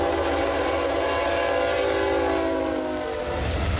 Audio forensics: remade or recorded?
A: recorded